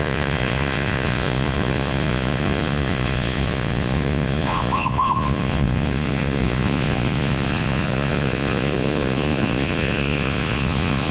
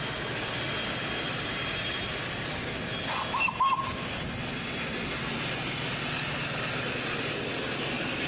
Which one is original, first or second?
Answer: second